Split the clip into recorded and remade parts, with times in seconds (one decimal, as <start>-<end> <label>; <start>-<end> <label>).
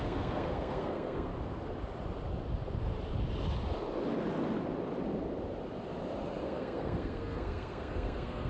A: 0.0-1.3 remade; 1.3-6.4 recorded; 6.4-8.5 remade